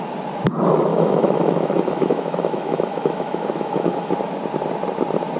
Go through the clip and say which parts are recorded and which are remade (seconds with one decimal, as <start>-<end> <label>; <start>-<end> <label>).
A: 0.0-0.9 recorded; 0.9-4.1 remade; 4.1-5.4 recorded